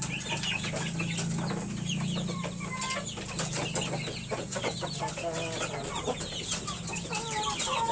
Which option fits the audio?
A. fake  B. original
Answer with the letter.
B